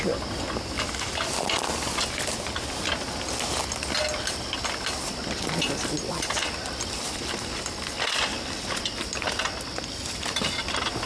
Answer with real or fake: real